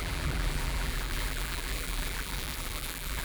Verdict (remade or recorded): remade